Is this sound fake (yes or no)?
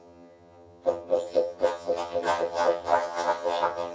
yes